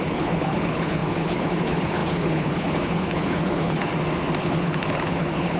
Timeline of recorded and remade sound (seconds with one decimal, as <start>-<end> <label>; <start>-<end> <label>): 0.0-3.9 remade; 3.9-4.4 recorded; 4.4-5.6 remade